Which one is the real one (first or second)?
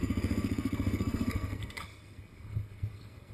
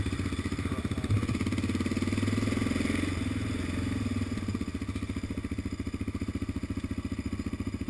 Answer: second